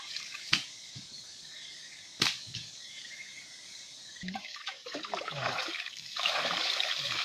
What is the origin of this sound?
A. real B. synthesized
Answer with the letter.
B